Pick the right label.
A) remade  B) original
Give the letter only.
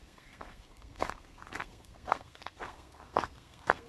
A